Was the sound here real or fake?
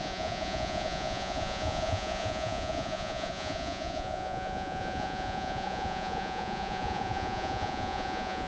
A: fake